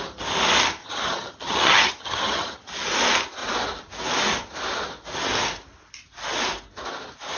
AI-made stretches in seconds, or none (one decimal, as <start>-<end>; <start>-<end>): 0.8-2.7